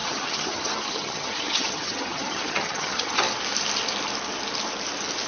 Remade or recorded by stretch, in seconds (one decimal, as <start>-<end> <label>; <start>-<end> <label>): 0.0-3.2 remade; 3.2-5.3 recorded

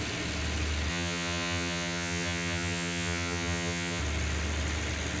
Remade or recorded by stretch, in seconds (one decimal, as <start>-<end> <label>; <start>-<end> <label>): 0.0-0.9 recorded; 0.9-4.0 remade; 4.0-5.2 recorded

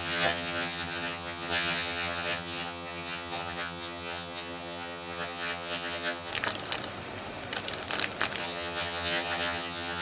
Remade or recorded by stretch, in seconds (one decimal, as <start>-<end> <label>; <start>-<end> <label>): 0.0-6.3 remade; 6.3-8.4 recorded; 8.4-10.0 remade

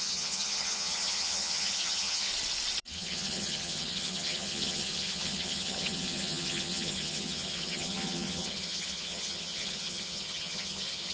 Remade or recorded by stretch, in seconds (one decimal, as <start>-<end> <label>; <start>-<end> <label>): 0.0-2.3 remade; 2.3-2.8 recorded; 2.8-11.1 remade

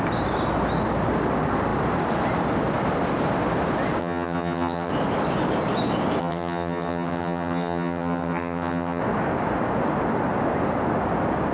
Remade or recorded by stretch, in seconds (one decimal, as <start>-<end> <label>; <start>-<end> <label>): 0.0-4.0 recorded; 4.0-4.9 remade; 4.9-6.2 recorded; 6.2-9.0 remade; 9.0-11.5 recorded

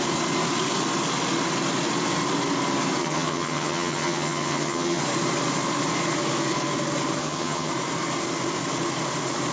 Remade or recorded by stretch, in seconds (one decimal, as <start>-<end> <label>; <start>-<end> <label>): 0.0-3.0 recorded; 3.0-5.0 remade; 5.0-7.2 recorded; 7.2-7.7 remade; 7.7-9.5 recorded

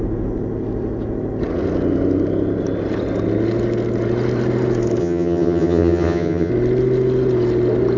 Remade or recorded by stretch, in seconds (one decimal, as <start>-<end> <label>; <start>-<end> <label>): 0.0-5.0 recorded; 5.0-6.5 remade; 6.5-8.0 recorded

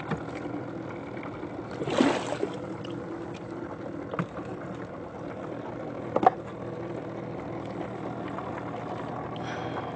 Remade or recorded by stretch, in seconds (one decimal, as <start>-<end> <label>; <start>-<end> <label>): 0.0-10.0 recorded